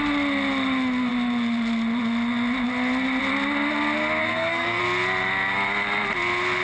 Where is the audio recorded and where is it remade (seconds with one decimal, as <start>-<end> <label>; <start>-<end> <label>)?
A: 0.0-4.2 recorded; 4.2-4.8 remade; 4.8-6.6 recorded